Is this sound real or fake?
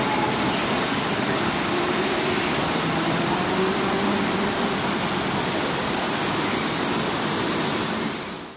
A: fake